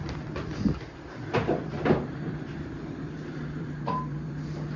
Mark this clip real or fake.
fake